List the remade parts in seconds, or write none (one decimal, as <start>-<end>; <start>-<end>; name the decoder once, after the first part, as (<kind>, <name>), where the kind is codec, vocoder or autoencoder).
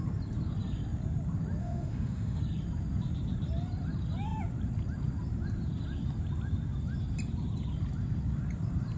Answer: 1.6-2.4 (autoencoder, DAC-VAE)